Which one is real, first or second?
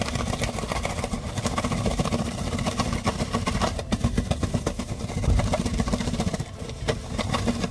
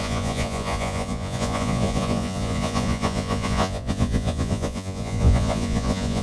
first